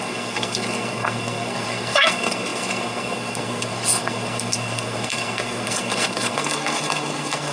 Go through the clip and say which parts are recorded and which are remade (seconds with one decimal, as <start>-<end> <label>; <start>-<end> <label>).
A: 0.0-7.5 remade